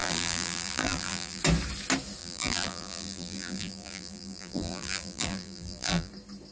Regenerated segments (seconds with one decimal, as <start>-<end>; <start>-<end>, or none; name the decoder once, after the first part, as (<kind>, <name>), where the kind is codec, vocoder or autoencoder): 0.0-1.4 (vocoder, BigVGAN v2); 2.2-6.1